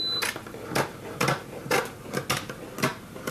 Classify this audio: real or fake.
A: real